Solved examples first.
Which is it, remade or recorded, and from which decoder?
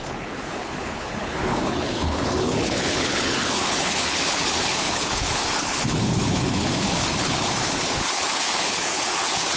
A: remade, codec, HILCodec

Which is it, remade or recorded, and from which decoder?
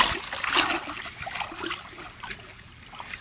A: recorded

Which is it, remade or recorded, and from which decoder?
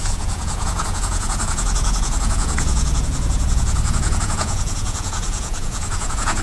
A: remade, vocoder, Vocos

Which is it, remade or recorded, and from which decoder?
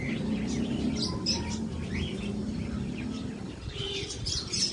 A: recorded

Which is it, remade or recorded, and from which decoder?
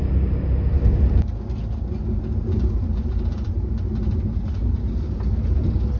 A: recorded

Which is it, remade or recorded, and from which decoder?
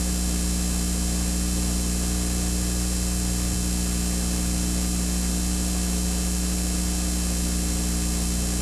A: recorded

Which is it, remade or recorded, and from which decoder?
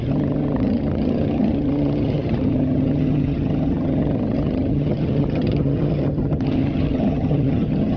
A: remade, vocoder, HiFi-GAN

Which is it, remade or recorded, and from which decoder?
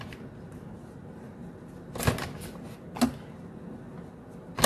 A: recorded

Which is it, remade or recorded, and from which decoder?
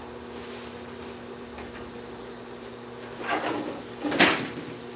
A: recorded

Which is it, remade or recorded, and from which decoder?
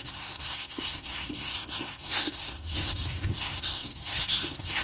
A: remade, codec, SNAC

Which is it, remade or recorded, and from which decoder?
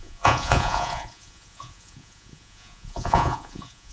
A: remade, vocoder, Vocos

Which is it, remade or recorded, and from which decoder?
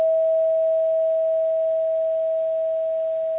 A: recorded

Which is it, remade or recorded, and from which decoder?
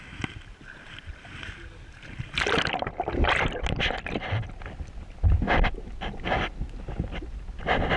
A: recorded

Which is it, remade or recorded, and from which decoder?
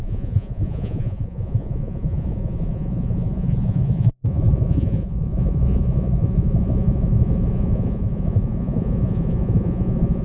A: remade, vocoder, Vocos